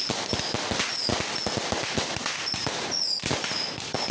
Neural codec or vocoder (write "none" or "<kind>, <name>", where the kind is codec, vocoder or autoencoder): none